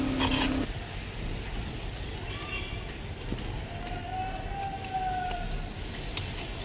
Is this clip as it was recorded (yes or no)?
yes